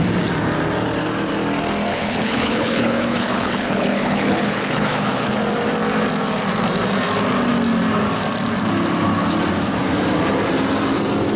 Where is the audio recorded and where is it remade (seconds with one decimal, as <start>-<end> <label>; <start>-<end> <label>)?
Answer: 0.0-1.9 recorded; 1.9-5.4 remade; 5.4-11.4 recorded